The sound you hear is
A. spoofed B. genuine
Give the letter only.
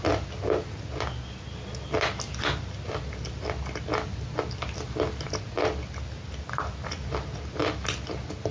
B